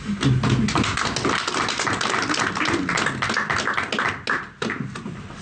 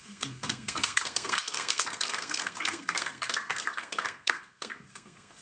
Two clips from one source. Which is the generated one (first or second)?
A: second